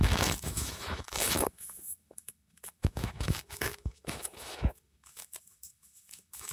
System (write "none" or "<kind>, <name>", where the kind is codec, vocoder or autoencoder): autoencoder, DAC-VAE